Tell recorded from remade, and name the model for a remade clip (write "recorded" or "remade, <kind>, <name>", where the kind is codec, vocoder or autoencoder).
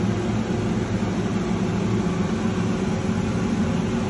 recorded